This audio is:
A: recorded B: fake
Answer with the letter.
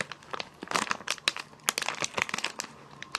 A